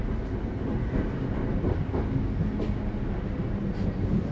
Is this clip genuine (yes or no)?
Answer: yes